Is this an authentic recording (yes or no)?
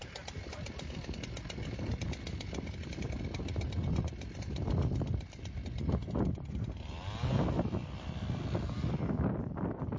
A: yes